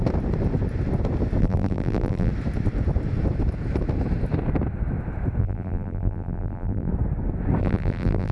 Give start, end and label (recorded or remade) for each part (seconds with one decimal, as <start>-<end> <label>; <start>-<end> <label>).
0.0-1.4 recorded; 1.4-2.3 remade; 2.3-5.4 recorded; 5.4-6.9 remade; 6.9-7.6 recorded; 7.6-8.3 remade